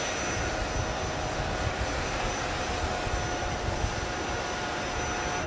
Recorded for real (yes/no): yes